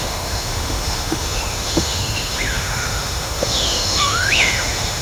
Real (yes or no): no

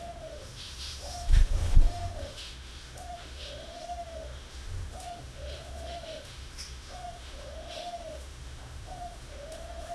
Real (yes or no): no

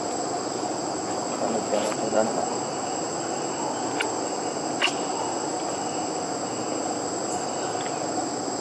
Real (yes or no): yes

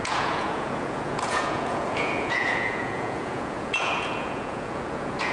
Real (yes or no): no